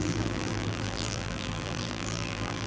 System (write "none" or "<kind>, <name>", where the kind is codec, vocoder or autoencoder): vocoder, BigVGAN v2